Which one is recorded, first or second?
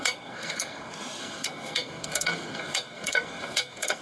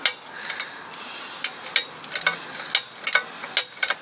second